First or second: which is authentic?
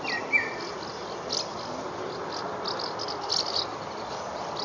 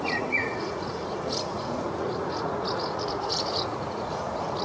first